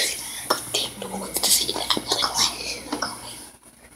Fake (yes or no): yes